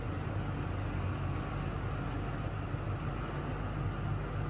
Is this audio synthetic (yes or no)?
no